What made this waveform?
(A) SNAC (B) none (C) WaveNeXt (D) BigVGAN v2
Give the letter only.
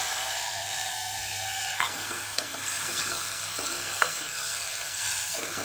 A